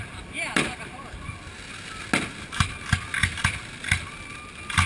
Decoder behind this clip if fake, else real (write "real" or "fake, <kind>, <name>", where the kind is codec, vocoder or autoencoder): real